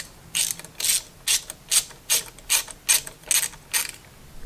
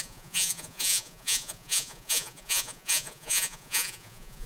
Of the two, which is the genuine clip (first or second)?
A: first